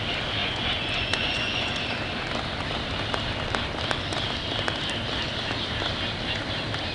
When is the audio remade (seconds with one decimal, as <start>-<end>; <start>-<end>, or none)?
0.4-1.8